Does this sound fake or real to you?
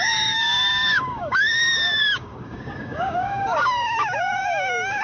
fake